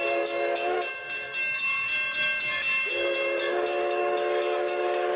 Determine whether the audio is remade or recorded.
remade